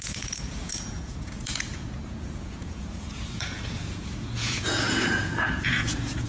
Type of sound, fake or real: fake